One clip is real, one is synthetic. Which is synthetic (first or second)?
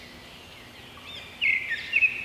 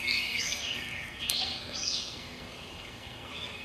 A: second